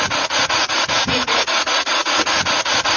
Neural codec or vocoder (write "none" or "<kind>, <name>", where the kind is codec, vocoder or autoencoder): vocoder, Vocos